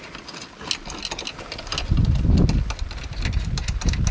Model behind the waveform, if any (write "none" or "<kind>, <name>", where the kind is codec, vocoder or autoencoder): none